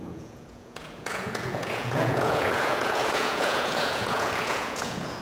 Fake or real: fake